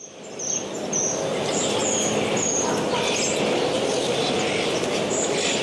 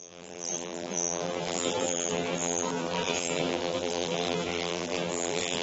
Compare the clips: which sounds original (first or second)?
first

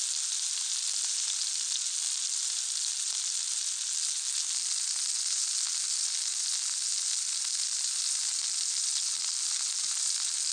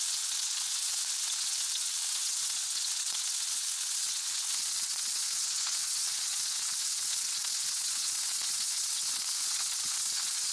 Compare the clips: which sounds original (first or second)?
first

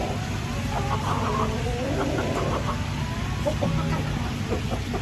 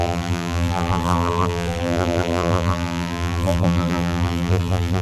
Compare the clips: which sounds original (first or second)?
first